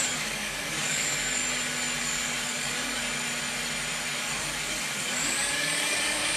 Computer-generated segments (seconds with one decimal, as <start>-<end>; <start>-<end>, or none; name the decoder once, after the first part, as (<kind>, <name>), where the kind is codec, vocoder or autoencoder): 0.0-1.4 (codec, DAC); 2.0-3.0; 4.2-6.4